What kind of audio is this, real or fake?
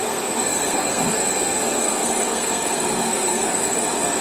fake